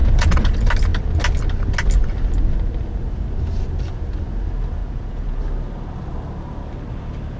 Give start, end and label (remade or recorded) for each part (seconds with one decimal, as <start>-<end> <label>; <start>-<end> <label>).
0.0-0.5 remade; 0.5-4.8 recorded; 4.8-5.4 remade; 5.4-7.4 recorded